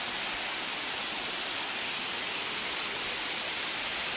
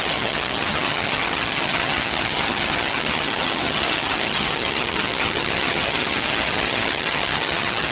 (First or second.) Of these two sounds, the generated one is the second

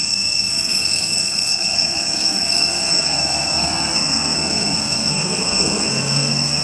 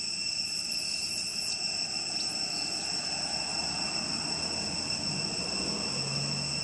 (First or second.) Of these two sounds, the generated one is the first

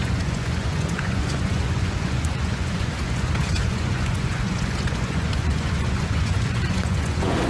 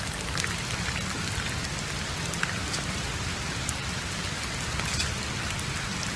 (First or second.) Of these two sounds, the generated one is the first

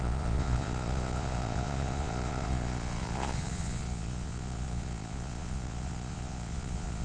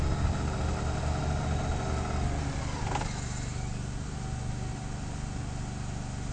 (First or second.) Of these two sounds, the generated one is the first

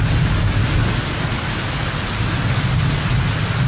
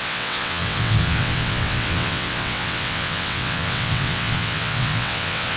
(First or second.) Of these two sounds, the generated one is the second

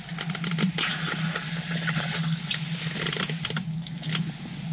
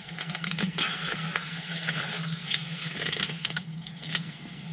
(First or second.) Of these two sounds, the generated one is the second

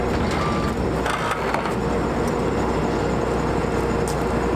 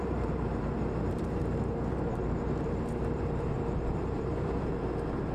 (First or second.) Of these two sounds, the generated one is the second